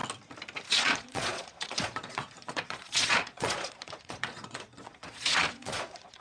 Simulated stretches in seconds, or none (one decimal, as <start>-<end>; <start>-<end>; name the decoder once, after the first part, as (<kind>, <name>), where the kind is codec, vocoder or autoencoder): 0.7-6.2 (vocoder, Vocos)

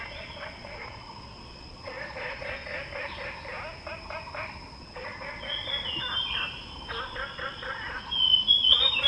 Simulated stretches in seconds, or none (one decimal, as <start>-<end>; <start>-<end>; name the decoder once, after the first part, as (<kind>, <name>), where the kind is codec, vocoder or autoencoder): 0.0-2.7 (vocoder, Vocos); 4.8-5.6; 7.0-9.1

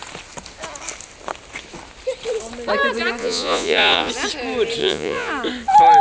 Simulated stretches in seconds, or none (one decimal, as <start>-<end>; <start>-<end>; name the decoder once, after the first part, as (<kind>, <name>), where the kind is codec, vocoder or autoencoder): 3.2-4.1 (vocoder, Vocos); 4.8-5.3

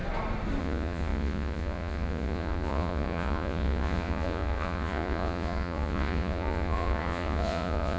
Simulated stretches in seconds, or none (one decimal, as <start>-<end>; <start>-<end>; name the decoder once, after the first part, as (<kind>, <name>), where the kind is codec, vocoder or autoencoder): 0.6-8.0 (vocoder, Vocos)